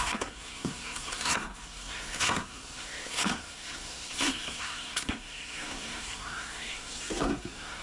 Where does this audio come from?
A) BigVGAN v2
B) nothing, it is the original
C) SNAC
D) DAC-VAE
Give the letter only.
C